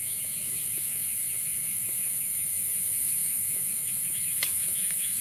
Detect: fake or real fake